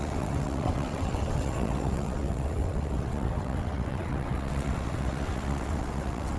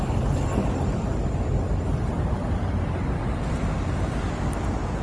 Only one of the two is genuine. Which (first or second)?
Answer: second